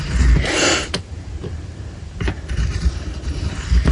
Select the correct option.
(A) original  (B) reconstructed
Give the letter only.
B